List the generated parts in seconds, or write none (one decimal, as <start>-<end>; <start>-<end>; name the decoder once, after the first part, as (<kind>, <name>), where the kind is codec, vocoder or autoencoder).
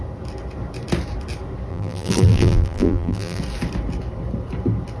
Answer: 1.7-3.4 (vocoder, BigVGAN v2)